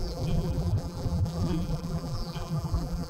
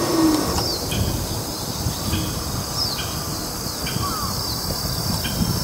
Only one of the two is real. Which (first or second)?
second